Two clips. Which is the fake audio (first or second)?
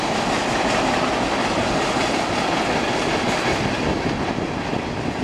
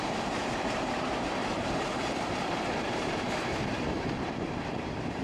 second